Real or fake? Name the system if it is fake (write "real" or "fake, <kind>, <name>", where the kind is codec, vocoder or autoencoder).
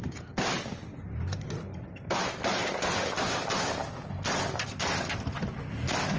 real